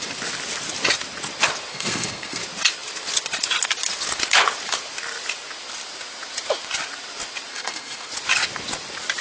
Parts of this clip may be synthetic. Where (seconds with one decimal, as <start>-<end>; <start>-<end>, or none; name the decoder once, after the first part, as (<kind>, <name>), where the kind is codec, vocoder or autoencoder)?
1.7-2.4 (codec, SNAC); 7.5-8.1